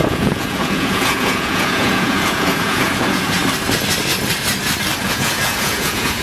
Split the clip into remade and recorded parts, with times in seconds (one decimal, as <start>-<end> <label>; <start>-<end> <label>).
0.0-3.4 remade; 3.4-5.0 recorded; 5.0-6.2 remade

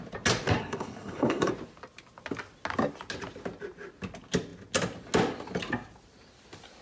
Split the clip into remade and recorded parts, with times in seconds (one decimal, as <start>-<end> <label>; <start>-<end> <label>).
0.0-0.6 recorded; 0.6-1.5 remade; 1.5-6.8 recorded

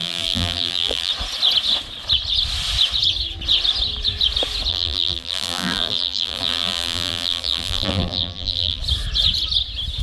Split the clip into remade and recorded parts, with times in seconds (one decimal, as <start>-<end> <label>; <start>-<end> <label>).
0.0-1.1 remade; 1.1-4.7 recorded; 4.7-8.8 remade; 8.8-10.0 recorded

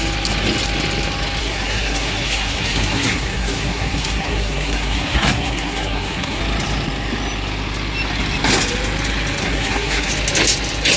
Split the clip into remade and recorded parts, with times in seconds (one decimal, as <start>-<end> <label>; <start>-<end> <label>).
0.0-1.4 recorded; 1.4-6.4 remade; 6.4-9.4 recorded; 9.4-10.1 remade; 10.1-11.0 recorded